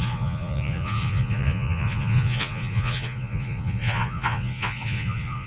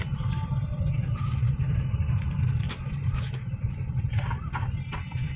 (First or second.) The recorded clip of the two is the second